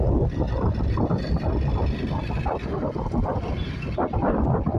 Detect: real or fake real